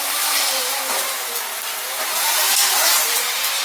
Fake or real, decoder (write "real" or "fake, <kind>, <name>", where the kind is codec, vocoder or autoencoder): fake, vocoder, BigVGAN v2